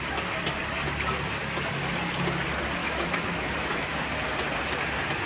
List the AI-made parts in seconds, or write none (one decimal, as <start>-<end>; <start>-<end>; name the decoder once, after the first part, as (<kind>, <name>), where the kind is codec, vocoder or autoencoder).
2.8-4.0 (autoencoder, DAC-VAE)